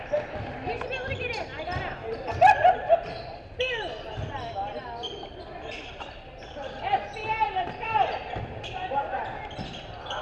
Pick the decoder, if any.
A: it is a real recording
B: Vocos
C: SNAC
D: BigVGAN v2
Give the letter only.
A